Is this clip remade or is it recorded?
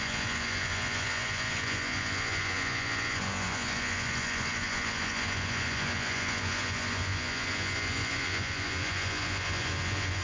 remade